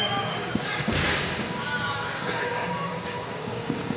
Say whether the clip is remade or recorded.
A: remade